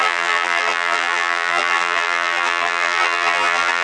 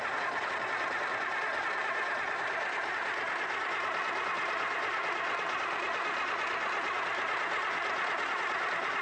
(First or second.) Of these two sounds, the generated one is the first